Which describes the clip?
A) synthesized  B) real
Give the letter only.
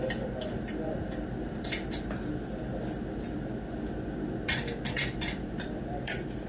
B